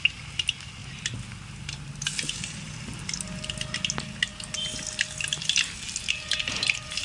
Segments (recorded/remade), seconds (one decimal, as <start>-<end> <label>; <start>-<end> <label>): 0.0-7.0 recorded